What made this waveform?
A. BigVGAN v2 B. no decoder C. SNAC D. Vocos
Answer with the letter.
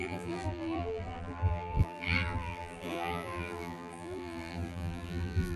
A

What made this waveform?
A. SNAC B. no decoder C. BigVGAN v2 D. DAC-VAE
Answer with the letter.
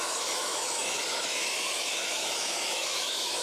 D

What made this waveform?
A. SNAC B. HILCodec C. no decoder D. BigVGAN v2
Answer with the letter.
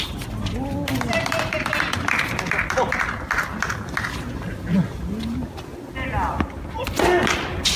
C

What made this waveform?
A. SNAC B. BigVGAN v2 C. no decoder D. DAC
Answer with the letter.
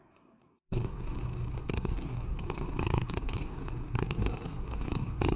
A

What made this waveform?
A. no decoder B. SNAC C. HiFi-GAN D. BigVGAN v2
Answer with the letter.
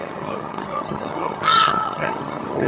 C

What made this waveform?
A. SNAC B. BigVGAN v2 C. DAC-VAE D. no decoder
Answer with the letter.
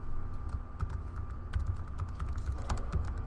D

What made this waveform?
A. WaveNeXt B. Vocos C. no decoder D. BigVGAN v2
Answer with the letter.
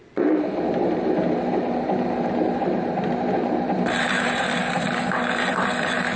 D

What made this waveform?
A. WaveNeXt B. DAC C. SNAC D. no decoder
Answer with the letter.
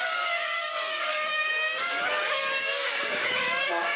B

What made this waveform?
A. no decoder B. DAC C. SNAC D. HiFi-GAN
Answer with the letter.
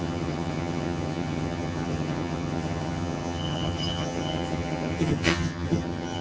D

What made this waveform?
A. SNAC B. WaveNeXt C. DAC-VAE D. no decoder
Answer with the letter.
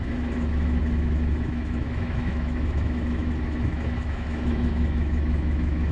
C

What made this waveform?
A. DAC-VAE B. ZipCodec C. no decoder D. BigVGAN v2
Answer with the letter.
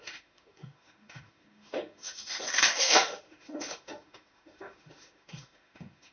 A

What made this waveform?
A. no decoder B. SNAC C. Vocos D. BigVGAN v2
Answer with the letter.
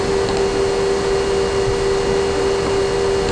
A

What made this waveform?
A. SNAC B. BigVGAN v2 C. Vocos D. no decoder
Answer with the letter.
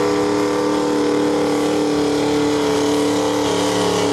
D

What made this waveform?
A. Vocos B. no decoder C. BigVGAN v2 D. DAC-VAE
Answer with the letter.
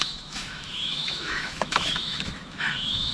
D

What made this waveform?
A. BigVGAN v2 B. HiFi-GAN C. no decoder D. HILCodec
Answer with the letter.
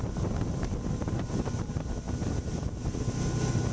C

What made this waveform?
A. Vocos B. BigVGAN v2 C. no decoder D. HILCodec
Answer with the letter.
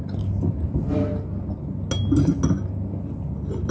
C